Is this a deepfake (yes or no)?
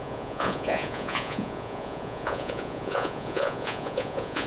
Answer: yes